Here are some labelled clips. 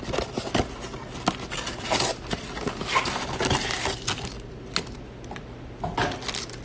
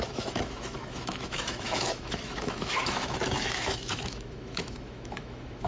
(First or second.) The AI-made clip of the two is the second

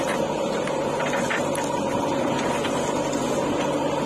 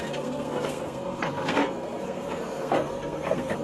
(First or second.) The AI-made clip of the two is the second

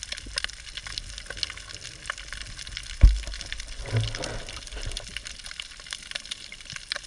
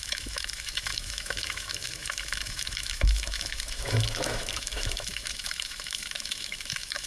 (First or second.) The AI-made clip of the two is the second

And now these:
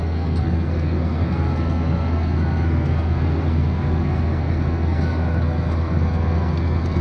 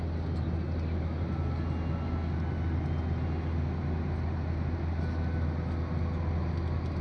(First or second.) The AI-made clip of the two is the first